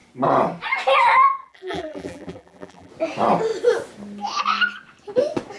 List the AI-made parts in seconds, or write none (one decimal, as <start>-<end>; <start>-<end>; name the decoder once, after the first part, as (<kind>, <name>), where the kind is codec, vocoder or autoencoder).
1.4-2.9 (vocoder, BigVGAN v2)